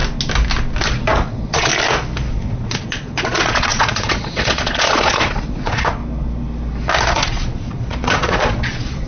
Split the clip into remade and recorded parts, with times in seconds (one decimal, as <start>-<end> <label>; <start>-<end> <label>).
0.0-1.1 recorded; 1.1-1.7 remade; 1.7-2.3 recorded; 2.3-6.0 remade; 6.0-7.1 recorded; 7.1-9.1 remade